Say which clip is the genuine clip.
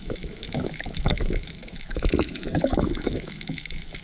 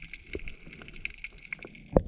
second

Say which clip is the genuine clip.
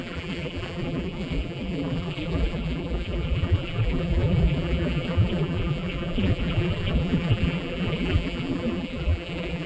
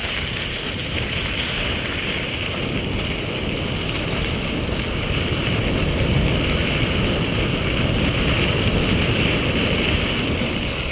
second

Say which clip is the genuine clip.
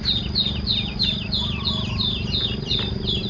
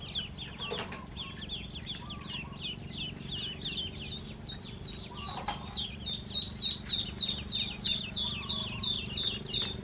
second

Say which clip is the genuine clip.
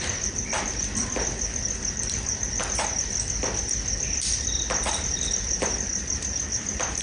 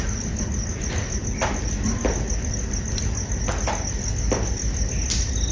second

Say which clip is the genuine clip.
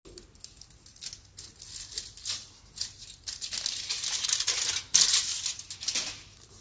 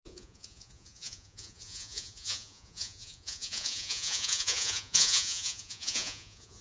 first